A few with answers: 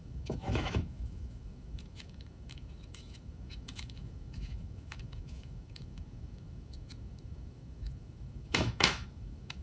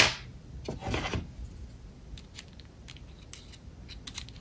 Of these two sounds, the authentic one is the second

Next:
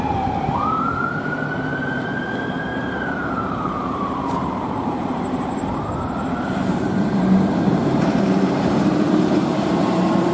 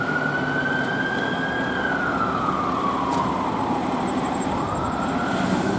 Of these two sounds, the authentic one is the second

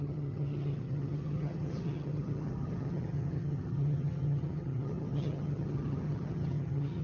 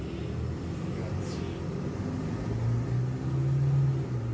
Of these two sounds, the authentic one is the second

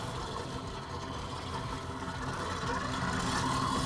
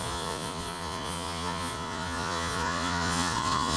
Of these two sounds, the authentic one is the first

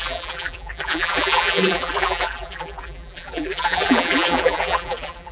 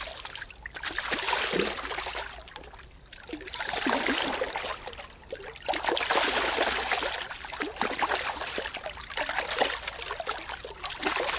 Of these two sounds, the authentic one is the second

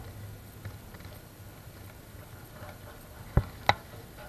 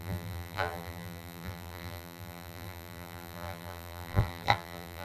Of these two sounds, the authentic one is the first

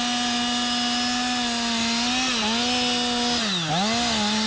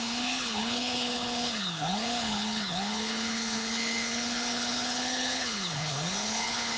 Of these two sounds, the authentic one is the first